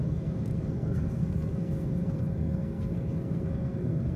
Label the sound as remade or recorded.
remade